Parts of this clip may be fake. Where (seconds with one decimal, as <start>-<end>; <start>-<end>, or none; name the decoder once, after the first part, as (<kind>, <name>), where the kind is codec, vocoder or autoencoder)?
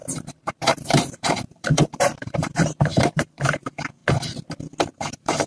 0.0-4.0 (vocoder, BigVGAN v2); 5.0-5.5